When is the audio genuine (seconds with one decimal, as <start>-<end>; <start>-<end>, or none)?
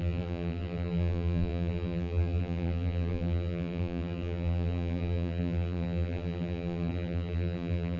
none